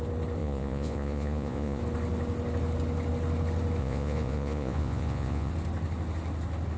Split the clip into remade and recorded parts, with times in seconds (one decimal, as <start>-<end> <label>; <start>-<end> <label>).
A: 0.0-0.4 recorded; 0.4-1.8 remade; 1.8-3.8 recorded; 3.8-5.5 remade; 5.5-6.8 recorded